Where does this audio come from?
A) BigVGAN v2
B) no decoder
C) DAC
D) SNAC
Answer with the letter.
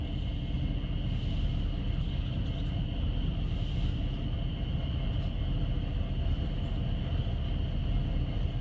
B